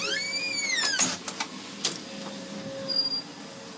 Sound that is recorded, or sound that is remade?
recorded